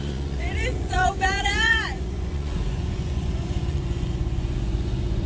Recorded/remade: remade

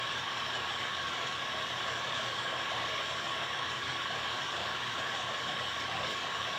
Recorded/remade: remade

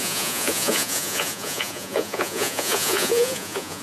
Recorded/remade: remade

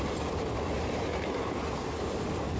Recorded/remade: recorded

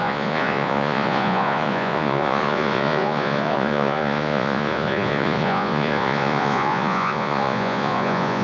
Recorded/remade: remade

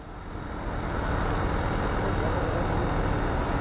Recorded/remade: recorded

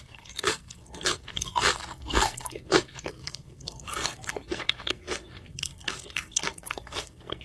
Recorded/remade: remade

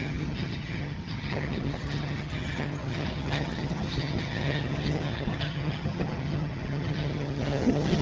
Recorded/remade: remade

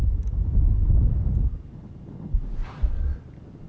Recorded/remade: recorded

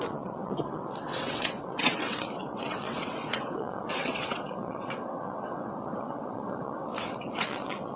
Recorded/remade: remade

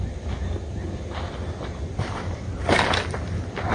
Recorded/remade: recorded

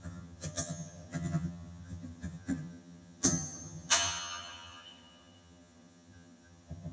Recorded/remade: remade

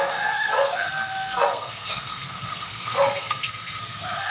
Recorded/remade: remade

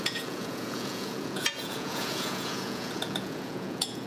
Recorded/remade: remade